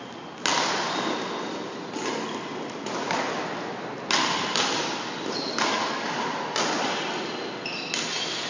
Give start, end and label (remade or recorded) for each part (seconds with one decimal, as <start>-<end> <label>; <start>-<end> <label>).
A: 0.0-8.5 recorded